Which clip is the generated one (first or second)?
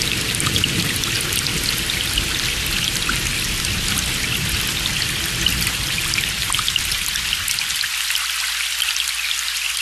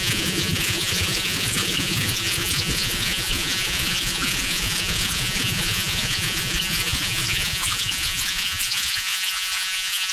second